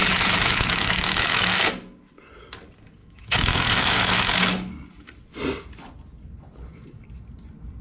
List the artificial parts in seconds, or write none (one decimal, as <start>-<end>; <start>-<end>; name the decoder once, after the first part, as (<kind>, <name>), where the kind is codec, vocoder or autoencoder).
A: 0.0-1.7 (autoencoder, DAC-VAE); 3.0-4.4